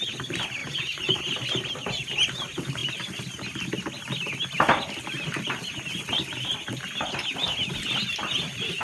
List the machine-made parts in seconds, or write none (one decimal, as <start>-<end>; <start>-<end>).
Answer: 0.6-1.2